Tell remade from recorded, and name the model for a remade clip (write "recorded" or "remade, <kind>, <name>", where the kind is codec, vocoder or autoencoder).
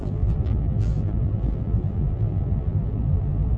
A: remade, vocoder, BigVGAN v2